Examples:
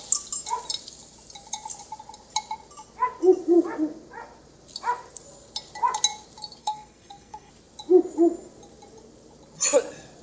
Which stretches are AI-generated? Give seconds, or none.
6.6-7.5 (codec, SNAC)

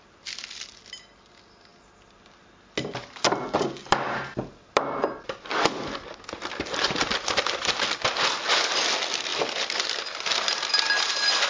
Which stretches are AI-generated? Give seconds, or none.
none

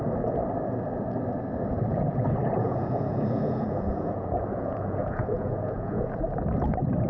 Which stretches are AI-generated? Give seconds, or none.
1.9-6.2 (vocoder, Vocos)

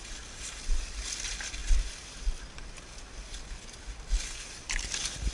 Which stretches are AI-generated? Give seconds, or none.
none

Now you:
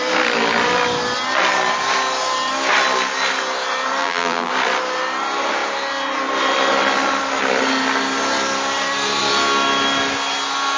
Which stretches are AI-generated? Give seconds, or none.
4.0-4.5 (vocoder, BigVGAN v2)